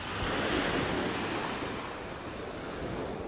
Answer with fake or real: real